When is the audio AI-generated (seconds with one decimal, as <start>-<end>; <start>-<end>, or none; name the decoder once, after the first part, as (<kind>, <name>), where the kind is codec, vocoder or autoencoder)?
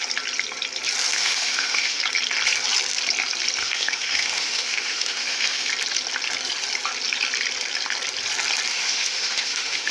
1.1-2.0 (autoencoder, DAC-VAE); 3.6-5.7; 8.7-9.9